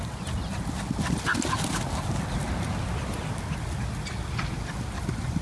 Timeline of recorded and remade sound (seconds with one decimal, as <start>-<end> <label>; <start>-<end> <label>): 0.0-5.4 recorded

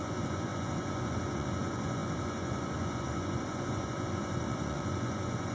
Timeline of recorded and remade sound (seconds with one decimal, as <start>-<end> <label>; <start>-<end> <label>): 0.0-5.5 remade

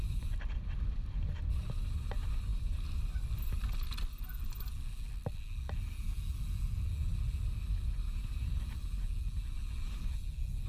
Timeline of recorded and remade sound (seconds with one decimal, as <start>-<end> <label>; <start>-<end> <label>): 0.0-10.7 recorded

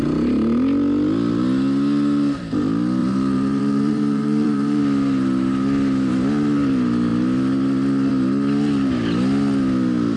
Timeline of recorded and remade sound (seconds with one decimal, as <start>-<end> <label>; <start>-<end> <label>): 0.0-3.0 recorded; 3.0-4.8 remade; 4.8-10.2 recorded

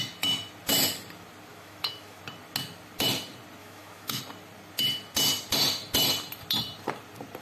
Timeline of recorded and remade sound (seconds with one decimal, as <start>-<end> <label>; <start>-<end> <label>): 0.0-1.5 recorded; 1.5-2.2 remade; 2.2-3.6 recorded; 3.6-4.2 remade; 4.2-7.4 recorded

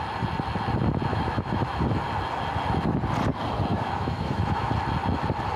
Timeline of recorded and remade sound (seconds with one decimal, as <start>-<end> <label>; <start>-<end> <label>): 0.0-1.1 recorded; 1.1-1.8 remade; 1.8-3.7 recorded; 3.7-4.7 remade; 4.7-5.6 recorded